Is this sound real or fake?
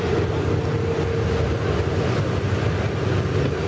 real